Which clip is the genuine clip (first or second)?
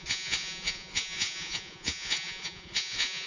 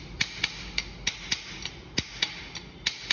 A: second